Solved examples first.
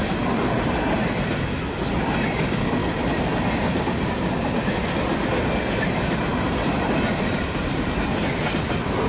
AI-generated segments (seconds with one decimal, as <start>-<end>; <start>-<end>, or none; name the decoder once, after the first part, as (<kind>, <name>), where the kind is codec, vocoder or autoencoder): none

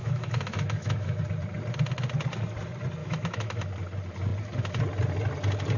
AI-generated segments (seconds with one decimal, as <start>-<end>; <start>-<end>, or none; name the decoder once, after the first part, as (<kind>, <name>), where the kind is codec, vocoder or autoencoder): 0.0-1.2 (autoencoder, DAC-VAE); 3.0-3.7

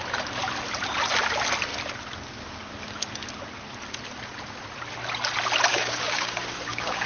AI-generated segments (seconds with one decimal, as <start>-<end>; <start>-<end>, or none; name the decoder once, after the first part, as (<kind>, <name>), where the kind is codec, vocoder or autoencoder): 5.7-7.1 (codec, DAC)